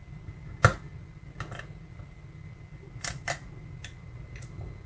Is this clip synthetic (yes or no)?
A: no